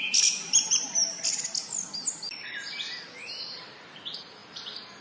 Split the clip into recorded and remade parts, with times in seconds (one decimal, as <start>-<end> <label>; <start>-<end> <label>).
0.0-5.0 recorded